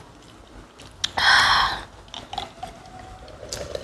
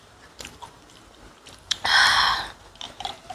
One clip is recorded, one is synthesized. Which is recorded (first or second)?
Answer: first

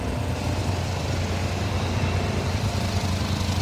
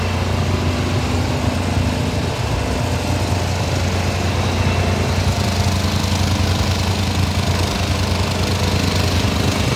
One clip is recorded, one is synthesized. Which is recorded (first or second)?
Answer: second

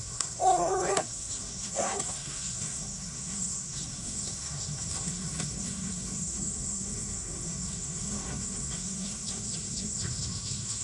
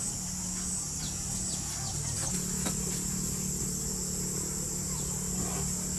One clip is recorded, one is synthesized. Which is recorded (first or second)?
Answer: second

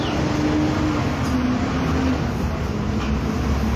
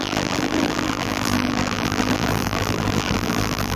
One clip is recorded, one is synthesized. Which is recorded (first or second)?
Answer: first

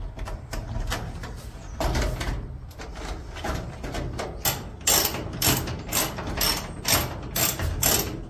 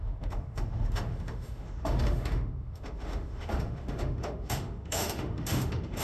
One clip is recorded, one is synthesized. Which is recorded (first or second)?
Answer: first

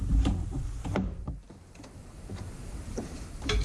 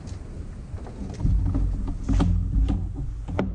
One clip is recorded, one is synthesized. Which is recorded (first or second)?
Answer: second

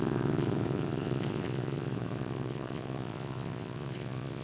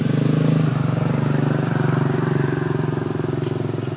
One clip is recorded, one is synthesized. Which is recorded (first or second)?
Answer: second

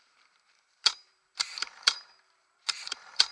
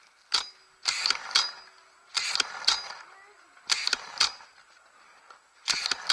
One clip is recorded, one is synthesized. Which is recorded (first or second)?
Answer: second